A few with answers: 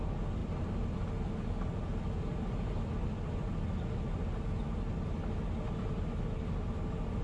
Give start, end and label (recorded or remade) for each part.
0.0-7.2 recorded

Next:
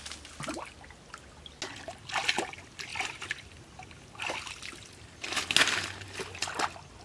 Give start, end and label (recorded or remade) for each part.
0.0-2.9 recorded; 2.9-3.6 remade; 3.6-7.0 recorded

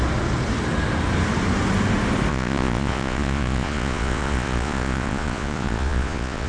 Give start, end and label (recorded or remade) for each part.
0.0-2.3 recorded; 2.3-6.5 remade

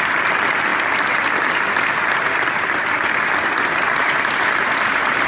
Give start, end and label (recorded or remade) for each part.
0.0-5.3 recorded

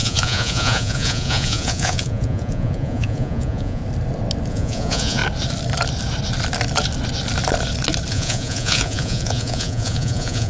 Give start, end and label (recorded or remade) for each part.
0.0-3.8 remade; 3.8-4.5 recorded; 4.5-5.2 remade; 5.2-8.1 recorded; 8.1-10.5 remade

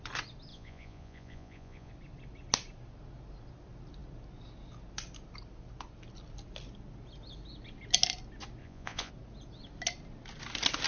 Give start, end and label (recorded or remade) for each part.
0.0-0.5 recorded; 0.5-1.9 remade; 1.9-8.6 recorded; 8.6-9.1 remade; 9.1-10.9 recorded

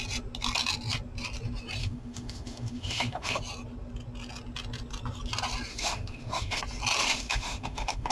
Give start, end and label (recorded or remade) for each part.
0.0-1.8 recorded; 1.8-3.4 remade; 3.4-5.7 recorded; 5.7-6.6 remade; 6.6-7.0 recorded; 7.0-8.1 remade

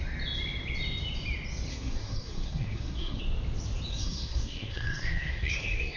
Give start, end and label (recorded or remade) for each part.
0.0-1.7 recorded; 1.7-3.2 remade; 3.2-3.9 recorded; 3.9-6.0 remade